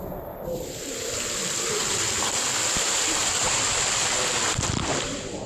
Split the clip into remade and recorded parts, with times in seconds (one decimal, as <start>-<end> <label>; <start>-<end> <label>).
0.0-5.5 remade